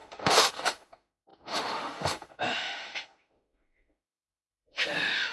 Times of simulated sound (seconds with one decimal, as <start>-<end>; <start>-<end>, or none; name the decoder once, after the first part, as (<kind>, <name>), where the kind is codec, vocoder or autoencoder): 0.0-5.3 (autoencoder, DAC-VAE)